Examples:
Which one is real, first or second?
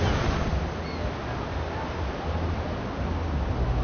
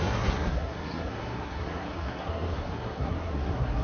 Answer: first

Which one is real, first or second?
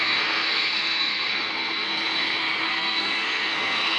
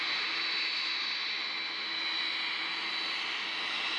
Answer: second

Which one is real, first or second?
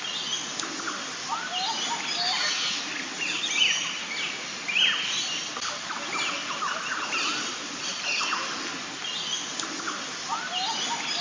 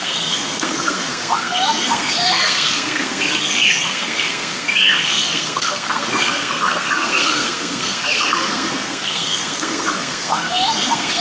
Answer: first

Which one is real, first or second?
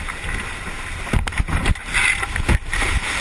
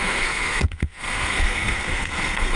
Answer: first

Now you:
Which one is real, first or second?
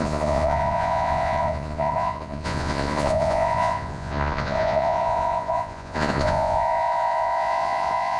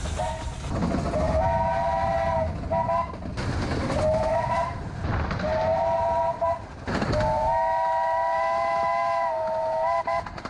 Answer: second